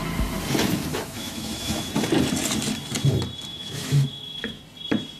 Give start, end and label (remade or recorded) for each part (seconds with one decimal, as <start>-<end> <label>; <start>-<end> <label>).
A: 0.0-0.9 recorded; 0.9-1.9 remade; 1.9-3.5 recorded; 3.5-4.6 remade; 4.6-5.2 recorded